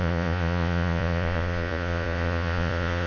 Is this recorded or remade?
remade